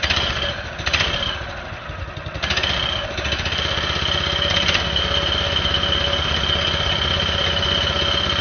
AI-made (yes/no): no